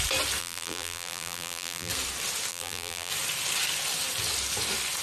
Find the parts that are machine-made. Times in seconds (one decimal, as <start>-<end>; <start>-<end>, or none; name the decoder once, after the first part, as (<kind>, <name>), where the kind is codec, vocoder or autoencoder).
0.4-1.9 (vocoder, BigVGAN v2); 2.5-3.1